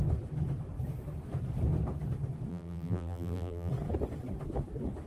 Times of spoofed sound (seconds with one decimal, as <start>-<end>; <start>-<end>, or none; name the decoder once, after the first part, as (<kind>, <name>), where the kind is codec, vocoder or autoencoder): 2.5-3.7 (vocoder, BigVGAN v2)

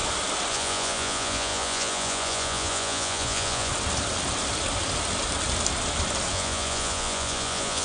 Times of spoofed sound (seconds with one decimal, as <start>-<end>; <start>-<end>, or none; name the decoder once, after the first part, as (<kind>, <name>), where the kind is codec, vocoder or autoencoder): 0.5-3.7 (vocoder, Vocos); 6.3-7.8

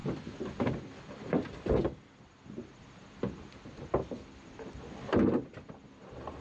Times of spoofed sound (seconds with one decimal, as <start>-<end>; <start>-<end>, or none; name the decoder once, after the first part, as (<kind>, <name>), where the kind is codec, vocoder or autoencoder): none

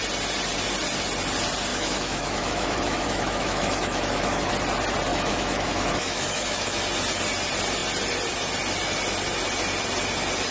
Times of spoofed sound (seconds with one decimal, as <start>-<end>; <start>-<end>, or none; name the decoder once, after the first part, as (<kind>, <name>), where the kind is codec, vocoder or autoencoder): 1.7-4.5 (autoencoder, DAC-VAE); 5.1-6.8